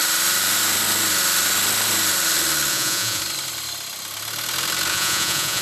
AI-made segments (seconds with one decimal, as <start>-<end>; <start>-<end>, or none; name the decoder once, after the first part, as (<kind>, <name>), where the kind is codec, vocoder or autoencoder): 2.7-3.2 (vocoder, Vocos); 4.9-5.6